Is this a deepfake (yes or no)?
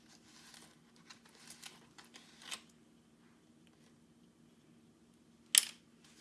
no